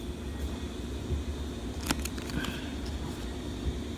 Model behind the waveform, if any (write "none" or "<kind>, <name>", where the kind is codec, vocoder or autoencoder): none